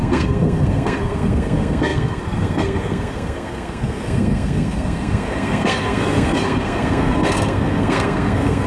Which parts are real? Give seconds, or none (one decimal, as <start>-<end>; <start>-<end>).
none